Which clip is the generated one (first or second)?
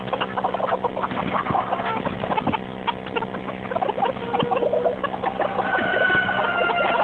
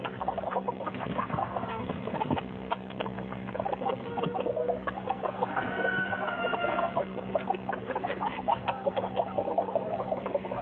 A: second